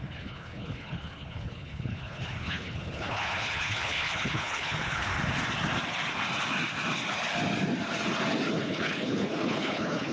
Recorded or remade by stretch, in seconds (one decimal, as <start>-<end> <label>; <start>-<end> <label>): 0.0-5.1 remade; 5.1-8.5 recorded; 8.5-10.1 remade